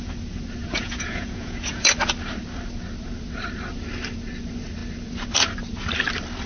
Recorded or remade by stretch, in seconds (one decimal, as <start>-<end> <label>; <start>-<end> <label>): 0.0-0.6 recorded; 0.6-1.9 remade; 1.9-6.5 recorded